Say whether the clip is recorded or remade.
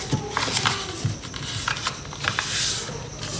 recorded